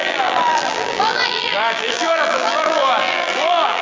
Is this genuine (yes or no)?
no